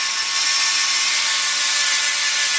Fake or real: real